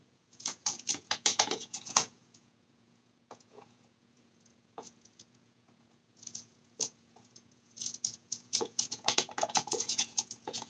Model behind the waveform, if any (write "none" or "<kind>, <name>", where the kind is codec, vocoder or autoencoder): vocoder, Vocos